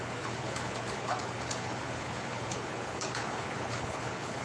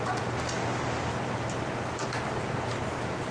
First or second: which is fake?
first